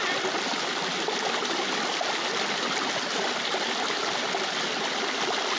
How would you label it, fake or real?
real